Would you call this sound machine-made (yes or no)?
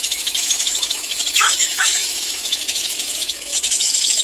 yes